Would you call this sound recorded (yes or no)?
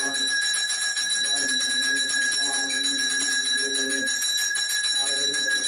no